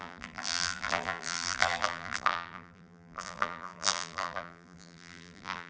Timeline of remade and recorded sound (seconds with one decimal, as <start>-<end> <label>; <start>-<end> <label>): 0.0-5.7 remade

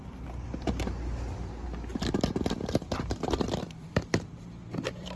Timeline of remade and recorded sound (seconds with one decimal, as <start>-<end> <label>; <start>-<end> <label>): 0.0-1.9 recorded; 1.9-5.2 remade

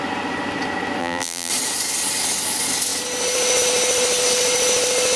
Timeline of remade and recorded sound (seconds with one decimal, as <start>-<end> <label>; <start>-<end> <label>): 0.0-1.0 recorded; 1.0-1.5 remade; 1.5-5.2 recorded

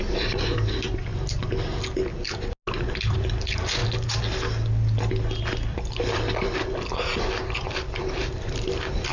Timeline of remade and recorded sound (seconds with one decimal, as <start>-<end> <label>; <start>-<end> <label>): 0.0-1.1 remade; 1.1-2.9 recorded; 2.9-3.8 remade; 3.8-5.4 recorded; 5.4-9.1 remade